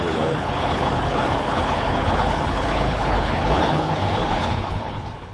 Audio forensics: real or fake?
fake